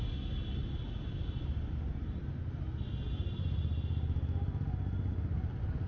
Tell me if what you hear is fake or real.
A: real